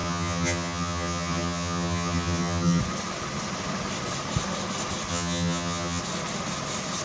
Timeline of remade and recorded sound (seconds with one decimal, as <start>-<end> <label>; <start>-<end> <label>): 0.0-2.8 remade; 2.8-5.1 recorded; 5.1-6.0 remade; 6.0-7.0 recorded